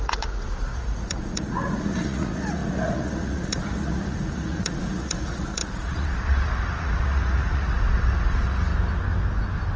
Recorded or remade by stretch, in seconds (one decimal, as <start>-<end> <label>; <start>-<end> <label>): 0.0-8.7 remade; 8.7-9.8 recorded